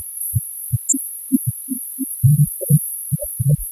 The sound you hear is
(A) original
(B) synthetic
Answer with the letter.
A